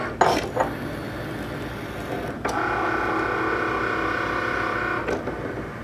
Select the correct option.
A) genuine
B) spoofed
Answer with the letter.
A